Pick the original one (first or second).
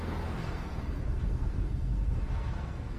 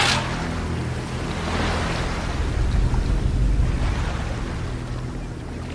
second